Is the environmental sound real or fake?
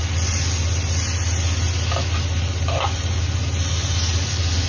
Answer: real